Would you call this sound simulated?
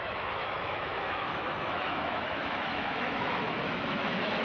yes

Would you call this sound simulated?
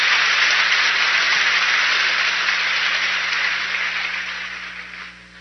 no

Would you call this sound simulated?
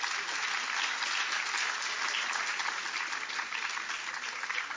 no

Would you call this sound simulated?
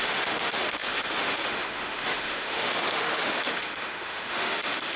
yes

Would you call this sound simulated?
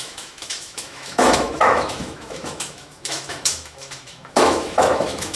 yes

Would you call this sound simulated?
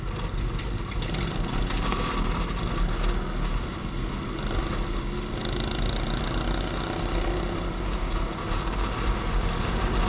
no